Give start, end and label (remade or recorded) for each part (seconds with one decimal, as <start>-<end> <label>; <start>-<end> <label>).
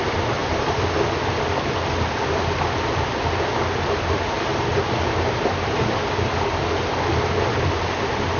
0.0-8.4 recorded